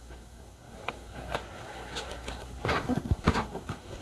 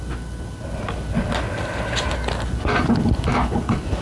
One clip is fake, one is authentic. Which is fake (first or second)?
first